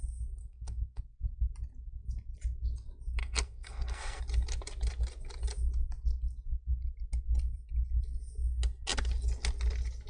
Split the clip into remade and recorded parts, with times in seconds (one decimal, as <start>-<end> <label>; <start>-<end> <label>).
0.0-0.4 recorded; 0.4-1.0 remade; 1.0-3.2 recorded; 3.2-4.2 remade; 4.2-10.1 recorded